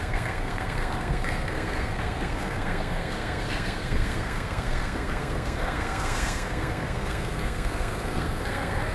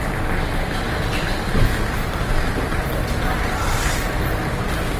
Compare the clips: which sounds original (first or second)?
second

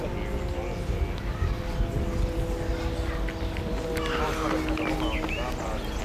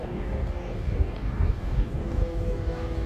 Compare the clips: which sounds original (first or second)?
first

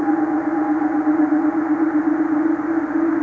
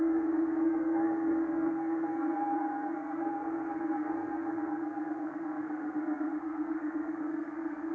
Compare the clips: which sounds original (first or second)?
first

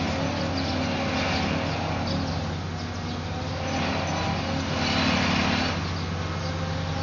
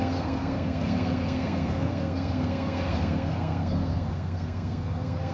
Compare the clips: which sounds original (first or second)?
first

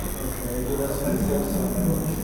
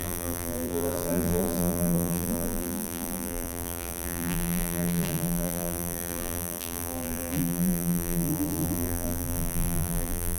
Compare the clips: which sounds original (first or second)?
first